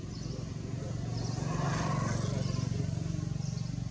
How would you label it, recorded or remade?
recorded